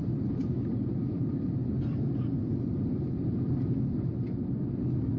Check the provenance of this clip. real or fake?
fake